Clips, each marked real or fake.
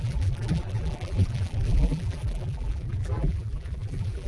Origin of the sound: fake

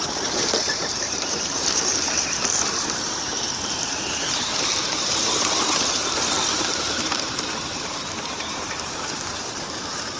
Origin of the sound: fake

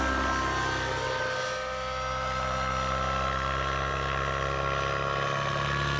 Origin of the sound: real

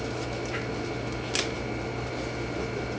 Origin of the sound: real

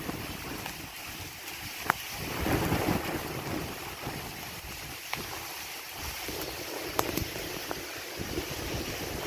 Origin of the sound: fake